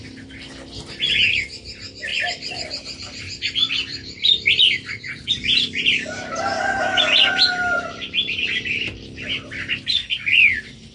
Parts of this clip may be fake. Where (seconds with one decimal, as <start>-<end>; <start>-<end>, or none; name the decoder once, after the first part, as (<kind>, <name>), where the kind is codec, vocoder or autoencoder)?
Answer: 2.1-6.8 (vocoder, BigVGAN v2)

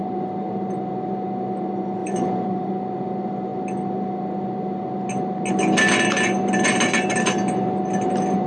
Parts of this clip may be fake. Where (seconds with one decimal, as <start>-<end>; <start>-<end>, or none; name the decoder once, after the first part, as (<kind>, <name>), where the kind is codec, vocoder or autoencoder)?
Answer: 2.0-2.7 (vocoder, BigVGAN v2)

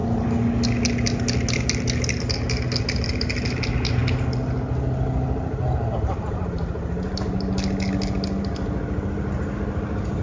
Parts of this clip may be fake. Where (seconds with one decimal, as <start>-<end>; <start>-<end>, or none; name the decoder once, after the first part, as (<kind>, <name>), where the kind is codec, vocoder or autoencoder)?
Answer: none

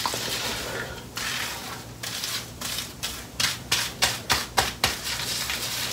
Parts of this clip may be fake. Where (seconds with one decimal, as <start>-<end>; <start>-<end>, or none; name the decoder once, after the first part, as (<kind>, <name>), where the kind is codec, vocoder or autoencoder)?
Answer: 0.0-1.6 (vocoder, BigVGAN v2); 2.2-5.9